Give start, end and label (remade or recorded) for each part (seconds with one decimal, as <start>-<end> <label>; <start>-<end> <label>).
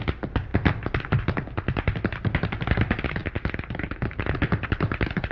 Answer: 0.0-5.3 recorded